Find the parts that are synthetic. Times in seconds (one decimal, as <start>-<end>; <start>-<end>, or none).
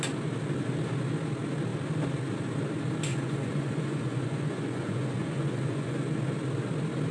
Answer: 3.1-6.0